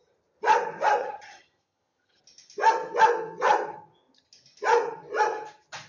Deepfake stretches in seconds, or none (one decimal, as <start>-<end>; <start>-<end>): 1.0-2.2